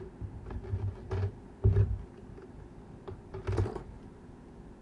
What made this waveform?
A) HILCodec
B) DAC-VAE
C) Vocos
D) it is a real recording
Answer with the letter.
D